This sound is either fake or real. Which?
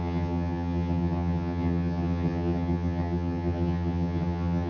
fake